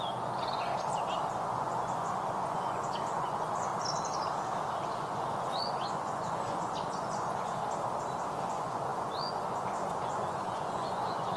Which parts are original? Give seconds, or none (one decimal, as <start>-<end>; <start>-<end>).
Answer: 0.7-1.4; 3.7-4.9; 7.6-8.4